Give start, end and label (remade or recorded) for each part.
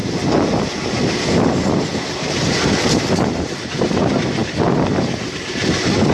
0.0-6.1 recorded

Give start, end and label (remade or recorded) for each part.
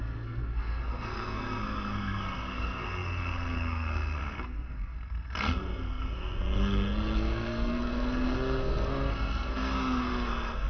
0.0-10.7 remade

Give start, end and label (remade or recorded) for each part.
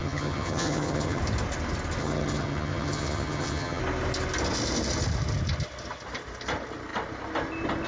0.0-1.2 remade; 1.2-2.0 recorded; 2.0-3.8 remade; 3.8-7.9 recorded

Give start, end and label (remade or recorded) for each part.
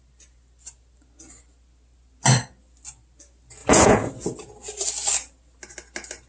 0.0-3.6 recorded; 3.6-4.1 remade; 4.1-6.3 recorded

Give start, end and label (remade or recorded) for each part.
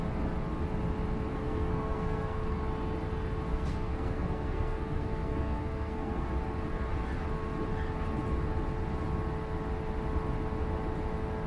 0.0-1.3 recorded; 1.3-2.6 remade; 2.6-3.5 recorded; 3.5-6.3 remade; 6.3-11.5 recorded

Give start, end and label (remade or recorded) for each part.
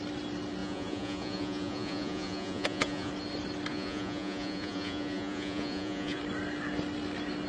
0.0-0.6 recorded; 0.6-3.1 remade; 3.1-3.7 recorded; 3.7-6.2 remade; 6.2-7.5 recorded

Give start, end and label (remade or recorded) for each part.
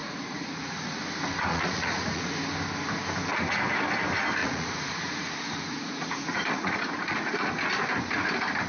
0.0-0.9 remade; 0.9-1.5 recorded; 1.5-2.3 remade; 2.3-4.4 recorded; 4.4-7.5 remade; 7.5-8.7 recorded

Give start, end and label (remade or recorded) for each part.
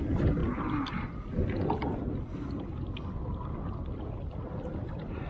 0.0-5.3 recorded